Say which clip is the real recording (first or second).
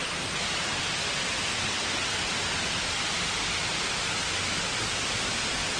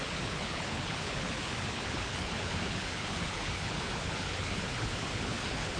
first